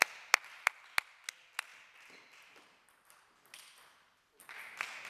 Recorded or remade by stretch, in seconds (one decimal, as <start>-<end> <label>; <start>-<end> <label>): 0.0-5.1 recorded